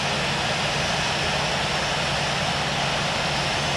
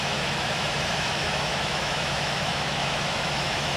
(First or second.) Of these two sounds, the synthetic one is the second